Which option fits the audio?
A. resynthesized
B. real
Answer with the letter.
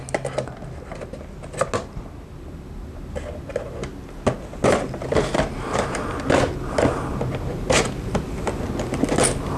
B